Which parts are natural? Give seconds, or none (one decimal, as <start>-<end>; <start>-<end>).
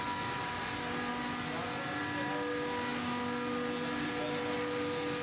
0.0-5.2